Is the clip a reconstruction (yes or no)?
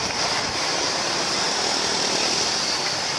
no